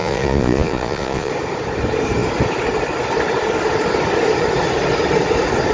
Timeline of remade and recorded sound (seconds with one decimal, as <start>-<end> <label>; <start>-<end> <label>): 0.0-1.3 remade; 1.3-5.7 recorded